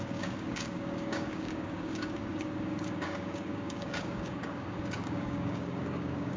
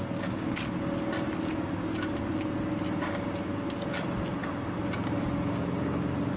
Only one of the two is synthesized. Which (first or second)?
first